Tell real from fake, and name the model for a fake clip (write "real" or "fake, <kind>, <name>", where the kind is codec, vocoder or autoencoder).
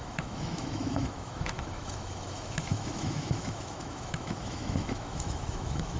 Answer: fake, autoencoder, DAC-VAE